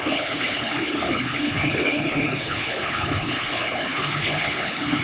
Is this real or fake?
fake